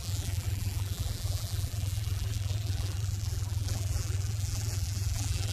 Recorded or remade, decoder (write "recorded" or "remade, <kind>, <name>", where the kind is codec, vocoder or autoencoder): remade, vocoder, BigVGAN v2